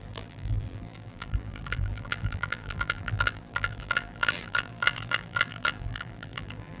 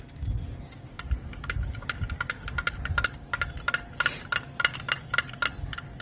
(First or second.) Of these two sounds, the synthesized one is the first